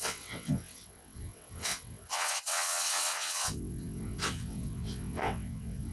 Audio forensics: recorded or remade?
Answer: remade